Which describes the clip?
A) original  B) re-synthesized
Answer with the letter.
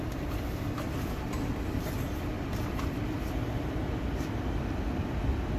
A